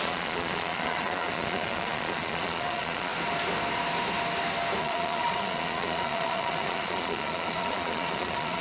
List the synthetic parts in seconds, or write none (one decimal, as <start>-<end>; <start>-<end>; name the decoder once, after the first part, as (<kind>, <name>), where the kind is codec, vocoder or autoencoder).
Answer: 0.0-3.1 (vocoder, Vocos); 4.8-8.6